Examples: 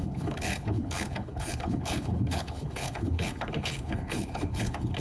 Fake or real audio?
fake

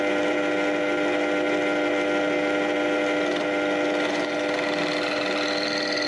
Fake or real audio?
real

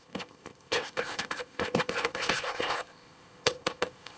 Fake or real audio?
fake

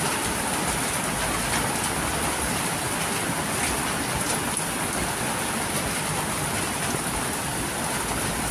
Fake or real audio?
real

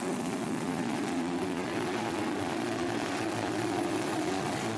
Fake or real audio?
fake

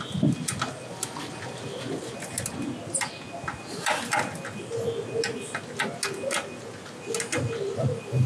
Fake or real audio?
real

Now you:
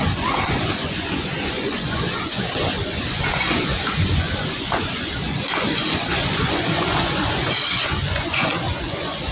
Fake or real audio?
fake